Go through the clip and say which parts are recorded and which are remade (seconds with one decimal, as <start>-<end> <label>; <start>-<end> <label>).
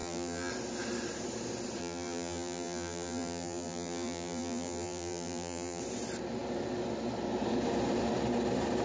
0.0-0.5 remade; 0.5-1.8 recorded; 1.8-5.8 remade; 5.8-8.8 recorded